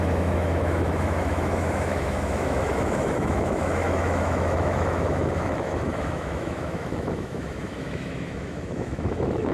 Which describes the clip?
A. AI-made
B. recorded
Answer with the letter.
A